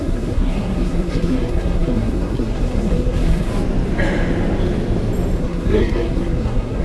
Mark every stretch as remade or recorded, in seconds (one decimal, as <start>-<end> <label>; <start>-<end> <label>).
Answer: 0.0-3.5 remade; 3.5-5.4 recorded; 5.4-6.8 remade